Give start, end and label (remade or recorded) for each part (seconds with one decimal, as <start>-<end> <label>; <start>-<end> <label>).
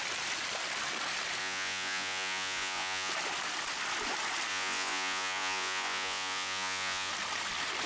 0.0-1.4 recorded; 1.4-3.1 remade; 3.1-4.5 recorded; 4.5-7.1 remade; 7.1-7.9 recorded